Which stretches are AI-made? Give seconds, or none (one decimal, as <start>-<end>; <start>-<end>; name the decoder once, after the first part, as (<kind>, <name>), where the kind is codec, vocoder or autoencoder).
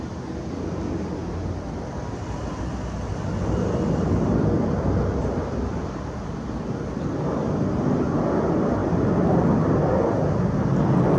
none